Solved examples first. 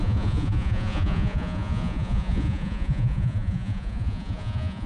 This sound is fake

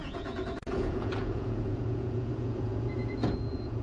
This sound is fake